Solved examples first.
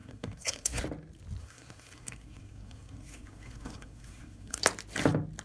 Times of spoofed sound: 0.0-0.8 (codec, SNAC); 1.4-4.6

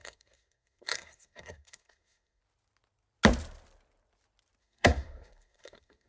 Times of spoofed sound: 0.0-2.4 (codec, SNAC); 4.6-6.1